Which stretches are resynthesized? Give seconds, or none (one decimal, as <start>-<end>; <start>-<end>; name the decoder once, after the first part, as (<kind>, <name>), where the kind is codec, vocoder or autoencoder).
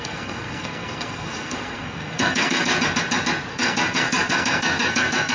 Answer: 0.0-2.7 (codec, SNAC); 3.5-5.3